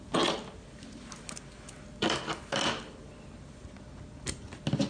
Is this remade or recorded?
recorded